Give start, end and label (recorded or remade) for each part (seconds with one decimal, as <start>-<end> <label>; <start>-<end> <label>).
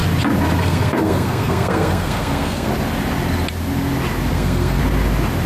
0.0-0.6 recorded; 0.6-2.7 remade; 2.7-4.3 recorded; 4.3-4.8 remade; 4.8-5.5 recorded